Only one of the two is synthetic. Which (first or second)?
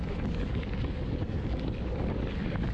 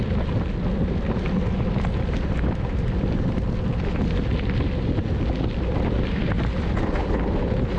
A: first